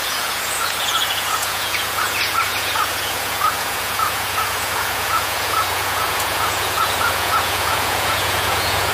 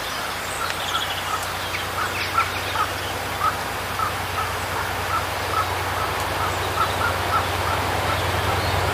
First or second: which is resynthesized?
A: first